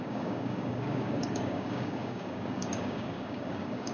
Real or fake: fake